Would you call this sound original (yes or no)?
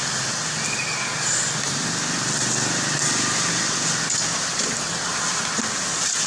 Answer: yes